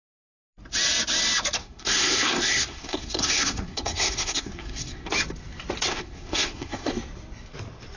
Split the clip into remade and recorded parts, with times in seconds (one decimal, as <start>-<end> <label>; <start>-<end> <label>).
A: 0.0-1.6 recorded; 1.6-5.1 remade; 5.1-5.9 recorded; 5.9-6.9 remade; 6.9-8.0 recorded